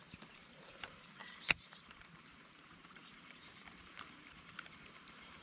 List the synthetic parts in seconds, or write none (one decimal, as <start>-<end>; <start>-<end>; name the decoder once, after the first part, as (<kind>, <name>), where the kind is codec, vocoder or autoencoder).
0.0-5.4 (vocoder, BigVGAN v2)